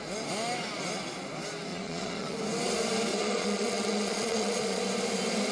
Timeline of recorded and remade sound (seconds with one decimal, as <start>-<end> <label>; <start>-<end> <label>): 0.0-1.7 recorded; 1.7-2.4 remade; 2.4-3.1 recorded; 3.1-4.8 remade; 4.8-5.5 recorded